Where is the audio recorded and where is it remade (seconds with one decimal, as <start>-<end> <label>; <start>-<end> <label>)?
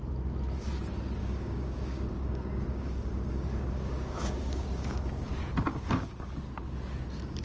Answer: 0.0-1.2 recorded; 1.2-5.3 remade; 5.3-5.7 recorded; 5.7-6.3 remade; 6.3-7.4 recorded